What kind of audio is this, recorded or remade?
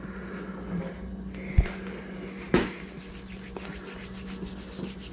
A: recorded